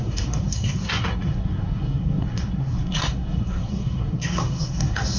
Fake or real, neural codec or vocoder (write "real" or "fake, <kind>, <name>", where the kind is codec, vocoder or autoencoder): fake, codec, SNAC